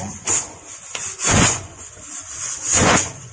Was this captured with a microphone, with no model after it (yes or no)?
no